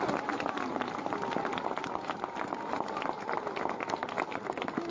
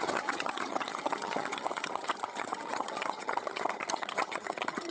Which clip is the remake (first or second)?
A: second